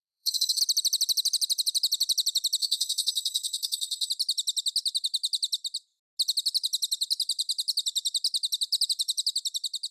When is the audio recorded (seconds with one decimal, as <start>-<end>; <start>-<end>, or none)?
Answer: 0.6-2.6; 4.1-9.9

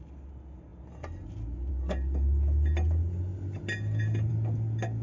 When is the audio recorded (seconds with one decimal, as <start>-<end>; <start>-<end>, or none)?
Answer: 0.0-5.0

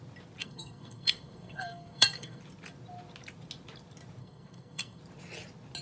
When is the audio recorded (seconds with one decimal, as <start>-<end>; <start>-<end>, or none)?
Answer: 0.0-0.4; 2.4-4.2; 5.0-5.8

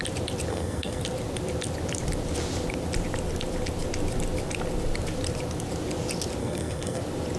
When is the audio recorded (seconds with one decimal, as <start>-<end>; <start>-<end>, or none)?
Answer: 0.0-0.5; 1.0-6.4; 7.0-7.4

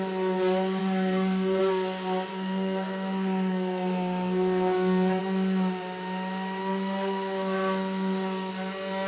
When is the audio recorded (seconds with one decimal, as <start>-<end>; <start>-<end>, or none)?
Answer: 0.0-0.8; 1.6-2.3; 5.2-6.6; 8.5-9.1

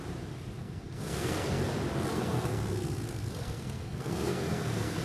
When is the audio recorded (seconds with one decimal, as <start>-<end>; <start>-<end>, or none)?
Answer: 0.0-0.6; 1.7-2.1

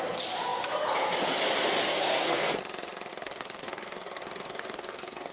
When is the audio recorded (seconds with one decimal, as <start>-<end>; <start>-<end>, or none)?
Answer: 0.0-1.9; 2.6-3.1

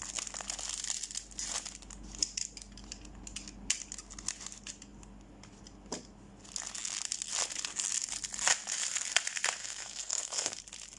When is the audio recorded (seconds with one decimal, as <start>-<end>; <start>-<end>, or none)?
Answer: 0.0-9.6; 10.6-11.0